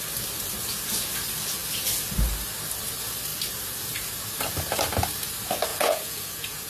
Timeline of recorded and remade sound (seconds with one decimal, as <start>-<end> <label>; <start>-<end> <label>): 0.0-5.7 recorded; 5.7-6.7 remade